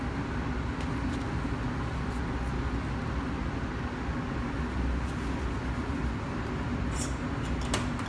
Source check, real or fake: real